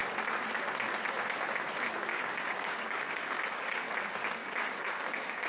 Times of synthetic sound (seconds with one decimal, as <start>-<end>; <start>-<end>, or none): 2.1-3.9; 4.4-5.5